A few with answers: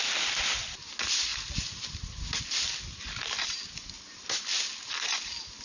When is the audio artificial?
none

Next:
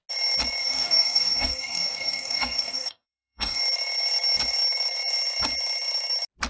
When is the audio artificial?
0.6-3.6